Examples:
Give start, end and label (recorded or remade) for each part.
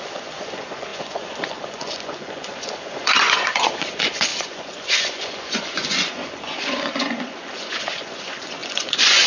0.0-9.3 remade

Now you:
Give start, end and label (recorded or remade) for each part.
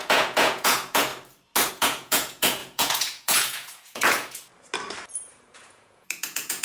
0.0-1.1 remade; 1.1-1.7 recorded; 1.7-4.5 remade; 4.5-5.5 recorded; 5.5-6.6 remade